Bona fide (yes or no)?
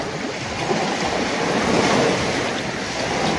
yes